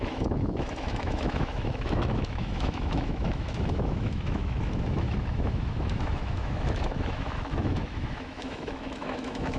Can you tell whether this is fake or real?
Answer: fake